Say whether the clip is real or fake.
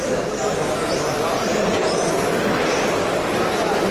real